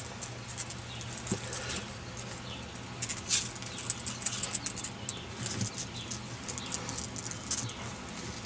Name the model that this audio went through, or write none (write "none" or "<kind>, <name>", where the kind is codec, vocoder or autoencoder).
none